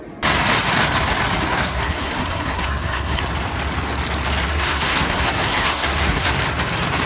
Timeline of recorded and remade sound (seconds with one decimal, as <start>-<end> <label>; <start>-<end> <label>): 0.0-1.5 recorded; 1.5-3.2 remade; 3.2-4.5 recorded; 4.5-6.3 remade; 6.3-7.1 recorded